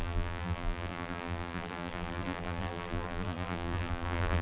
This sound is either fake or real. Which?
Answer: fake